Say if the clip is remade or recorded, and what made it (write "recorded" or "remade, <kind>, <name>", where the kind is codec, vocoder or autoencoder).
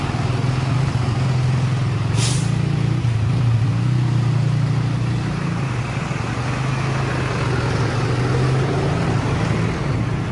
recorded